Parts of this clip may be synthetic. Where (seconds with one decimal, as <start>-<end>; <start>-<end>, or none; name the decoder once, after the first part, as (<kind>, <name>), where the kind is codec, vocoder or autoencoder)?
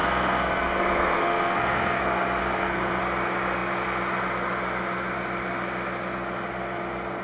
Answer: 0.0-2.0 (codec, SNAC); 2.4-3.0